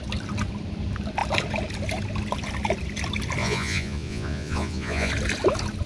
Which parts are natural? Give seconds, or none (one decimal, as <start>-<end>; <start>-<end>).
0.0-3.4; 5.1-5.9